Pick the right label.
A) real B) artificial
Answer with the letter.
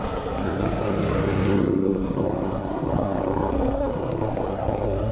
B